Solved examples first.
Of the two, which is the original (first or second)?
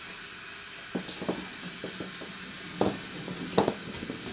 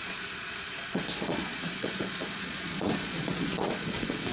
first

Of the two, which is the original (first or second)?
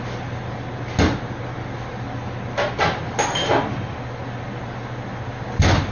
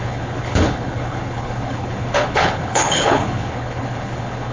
first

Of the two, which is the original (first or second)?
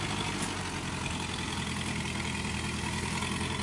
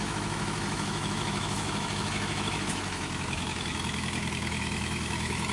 first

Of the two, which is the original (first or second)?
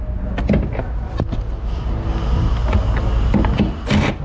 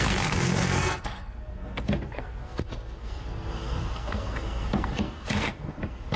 first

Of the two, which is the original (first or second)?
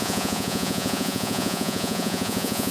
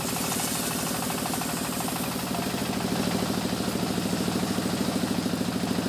second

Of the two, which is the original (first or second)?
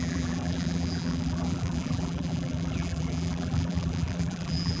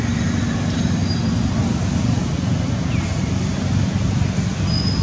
second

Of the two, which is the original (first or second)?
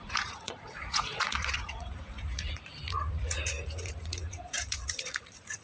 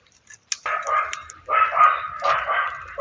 second